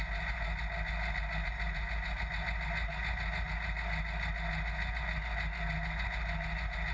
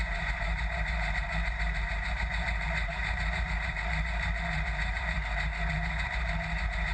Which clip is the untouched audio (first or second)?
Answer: first